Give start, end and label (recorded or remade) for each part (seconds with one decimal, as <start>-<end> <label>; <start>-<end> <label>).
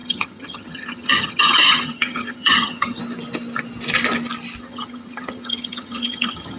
0.0-3.0 remade; 3.0-4.6 recorded; 4.6-6.6 remade